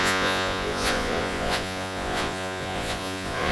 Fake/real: fake